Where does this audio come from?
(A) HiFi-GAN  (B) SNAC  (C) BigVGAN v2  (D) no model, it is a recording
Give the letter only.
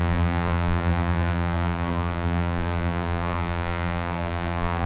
C